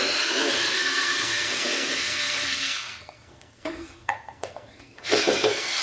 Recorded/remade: remade